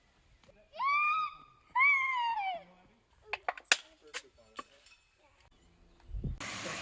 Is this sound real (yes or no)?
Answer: yes